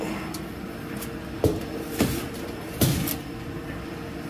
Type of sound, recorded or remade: recorded